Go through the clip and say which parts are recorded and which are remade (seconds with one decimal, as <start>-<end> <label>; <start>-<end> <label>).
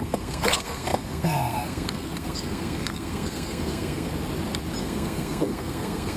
0.0-4.1 remade; 4.1-4.8 recorded; 4.8-6.2 remade